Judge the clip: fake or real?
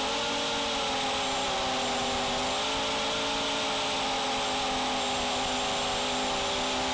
real